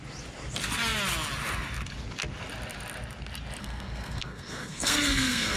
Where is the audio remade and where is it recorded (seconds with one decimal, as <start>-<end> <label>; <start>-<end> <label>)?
0.0-3.6 recorded; 3.6-5.6 remade